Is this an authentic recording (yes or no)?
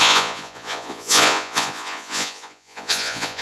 no